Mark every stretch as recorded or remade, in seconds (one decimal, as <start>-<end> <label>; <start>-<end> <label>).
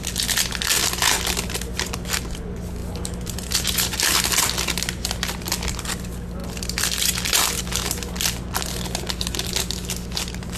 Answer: 0.0-2.8 recorded; 2.8-4.0 remade; 4.0-6.4 recorded; 6.4-7.6 remade; 7.6-10.6 recorded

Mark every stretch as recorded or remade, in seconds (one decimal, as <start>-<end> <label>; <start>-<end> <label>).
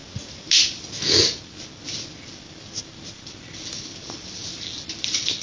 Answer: 0.0-5.4 recorded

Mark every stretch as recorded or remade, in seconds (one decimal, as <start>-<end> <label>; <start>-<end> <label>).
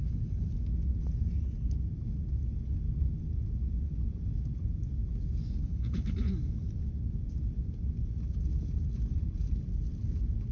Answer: 0.0-0.5 remade; 0.5-5.6 recorded; 5.6-6.3 remade; 6.3-10.5 recorded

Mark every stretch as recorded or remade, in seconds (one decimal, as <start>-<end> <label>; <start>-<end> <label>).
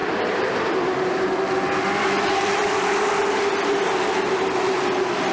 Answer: 0.0-3.2 remade; 3.2-5.3 recorded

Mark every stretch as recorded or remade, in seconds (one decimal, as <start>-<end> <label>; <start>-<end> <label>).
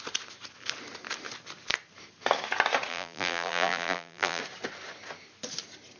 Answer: 0.0-2.9 recorded; 2.9-4.4 remade; 4.4-6.0 recorded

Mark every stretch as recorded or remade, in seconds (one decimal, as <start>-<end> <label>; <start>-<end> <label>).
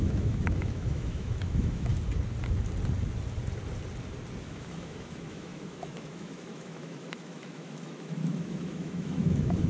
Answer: 0.0-1.9 remade; 1.9-4.4 recorded; 4.4-9.7 remade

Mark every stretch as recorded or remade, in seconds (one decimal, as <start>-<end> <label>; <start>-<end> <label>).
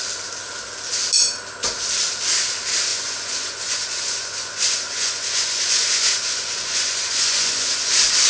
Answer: 0.0-2.9 recorded; 2.9-7.9 remade; 7.9-8.3 recorded